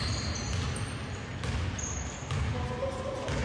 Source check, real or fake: real